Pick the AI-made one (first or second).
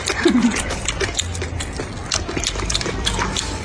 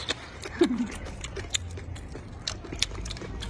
second